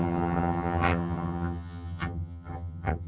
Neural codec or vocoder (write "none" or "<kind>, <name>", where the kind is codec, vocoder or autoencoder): vocoder, HiFi-GAN